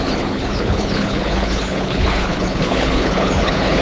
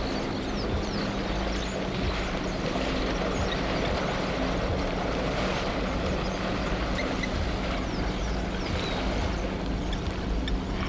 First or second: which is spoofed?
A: first